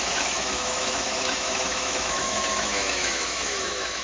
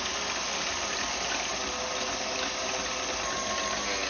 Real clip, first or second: second